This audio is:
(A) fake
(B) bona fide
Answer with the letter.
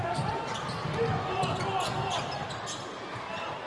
B